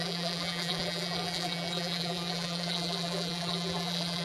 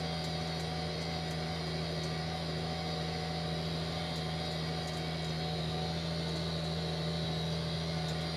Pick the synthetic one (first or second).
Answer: first